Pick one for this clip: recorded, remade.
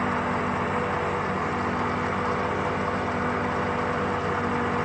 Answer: recorded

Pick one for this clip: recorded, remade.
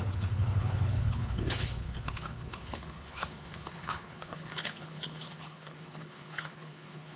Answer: remade